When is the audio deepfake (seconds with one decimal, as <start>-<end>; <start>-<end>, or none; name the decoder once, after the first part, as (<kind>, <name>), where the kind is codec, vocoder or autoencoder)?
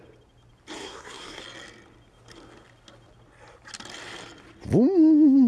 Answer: 0.8-1.4 (codec, SNAC)